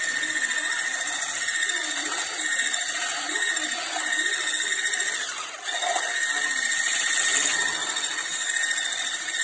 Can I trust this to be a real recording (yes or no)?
yes